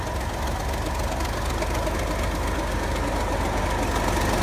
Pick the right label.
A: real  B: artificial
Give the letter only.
A